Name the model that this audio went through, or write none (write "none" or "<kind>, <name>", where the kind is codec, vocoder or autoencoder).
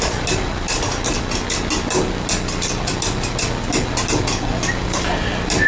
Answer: none